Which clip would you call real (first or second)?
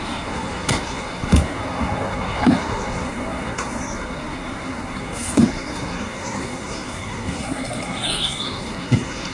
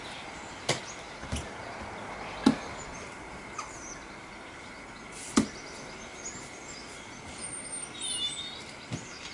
second